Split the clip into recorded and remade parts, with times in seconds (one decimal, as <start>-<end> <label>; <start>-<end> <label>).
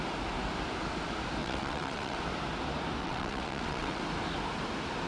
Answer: 0.0-1.4 recorded; 1.4-2.2 remade; 2.2-3.0 recorded; 3.0-4.0 remade; 4.0-5.1 recorded